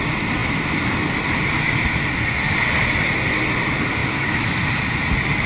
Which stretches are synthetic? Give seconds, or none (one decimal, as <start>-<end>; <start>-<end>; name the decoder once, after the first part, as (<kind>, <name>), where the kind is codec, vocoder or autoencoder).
4.0-4.6 (autoencoder, DAC-VAE)